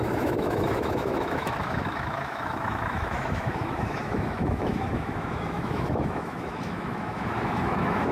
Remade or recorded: remade